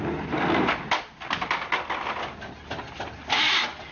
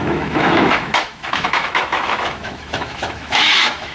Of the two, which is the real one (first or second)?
first